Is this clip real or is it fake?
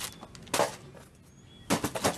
real